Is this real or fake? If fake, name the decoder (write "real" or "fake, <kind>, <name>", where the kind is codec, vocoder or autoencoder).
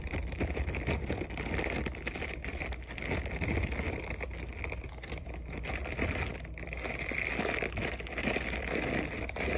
fake, vocoder, BigVGAN v2